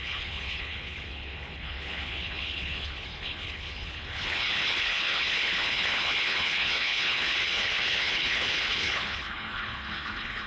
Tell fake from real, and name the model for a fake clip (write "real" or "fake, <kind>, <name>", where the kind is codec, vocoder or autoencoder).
fake, codec, HILCodec